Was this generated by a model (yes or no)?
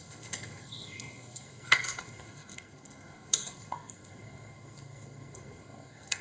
yes